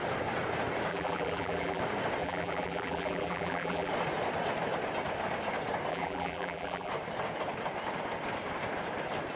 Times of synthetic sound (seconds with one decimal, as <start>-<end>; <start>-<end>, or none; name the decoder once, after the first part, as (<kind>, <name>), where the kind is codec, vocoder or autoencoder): 0.9-1.8 (vocoder, BigVGAN v2); 2.2-3.9; 5.9-6.9